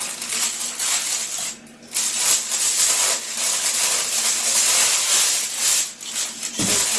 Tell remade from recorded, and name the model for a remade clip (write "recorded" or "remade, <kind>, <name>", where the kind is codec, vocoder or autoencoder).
recorded